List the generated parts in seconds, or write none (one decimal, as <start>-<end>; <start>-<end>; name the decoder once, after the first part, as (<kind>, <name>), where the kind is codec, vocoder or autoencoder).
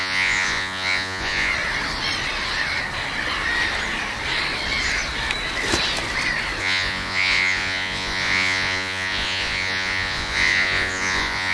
0.0-1.5 (vocoder, Vocos); 6.6-11.5